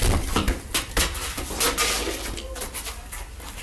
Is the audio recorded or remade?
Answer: recorded